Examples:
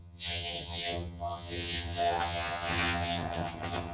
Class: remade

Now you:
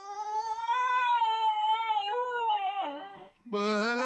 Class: remade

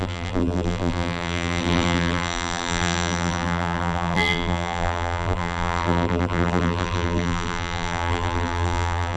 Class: remade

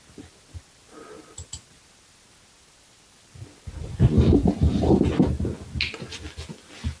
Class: recorded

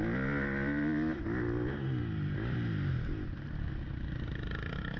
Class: recorded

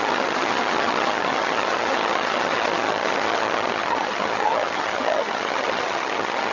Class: remade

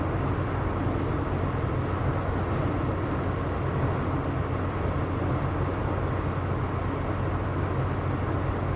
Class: recorded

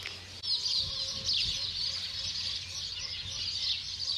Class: recorded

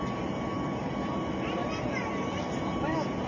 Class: recorded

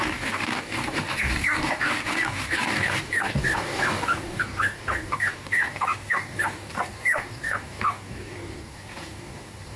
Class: remade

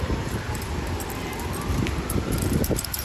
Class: remade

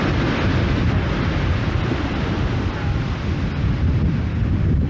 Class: recorded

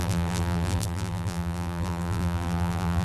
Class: remade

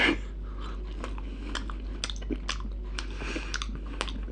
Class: recorded